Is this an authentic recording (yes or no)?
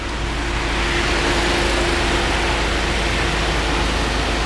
yes